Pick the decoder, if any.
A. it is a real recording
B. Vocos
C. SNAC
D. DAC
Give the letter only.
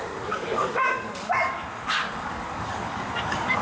D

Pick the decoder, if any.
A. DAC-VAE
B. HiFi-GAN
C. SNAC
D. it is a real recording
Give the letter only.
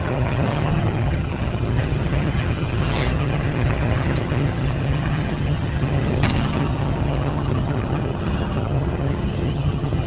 B